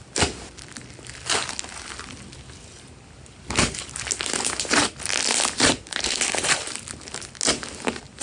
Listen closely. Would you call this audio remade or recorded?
recorded